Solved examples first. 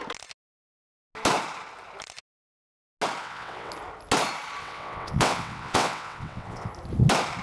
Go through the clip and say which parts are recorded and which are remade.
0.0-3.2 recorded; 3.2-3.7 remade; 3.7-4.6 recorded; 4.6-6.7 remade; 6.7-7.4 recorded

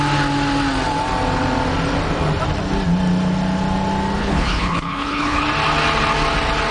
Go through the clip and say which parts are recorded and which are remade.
0.0-4.2 recorded; 4.2-5.4 remade; 5.4-6.7 recorded

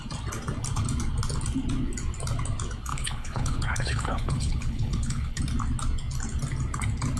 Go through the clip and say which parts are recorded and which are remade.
0.0-2.9 recorded; 2.9-5.4 remade; 5.4-7.2 recorded

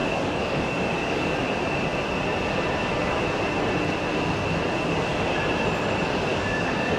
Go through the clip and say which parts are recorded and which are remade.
0.0-1.3 remade; 1.3-6.3 recorded; 6.3-7.0 remade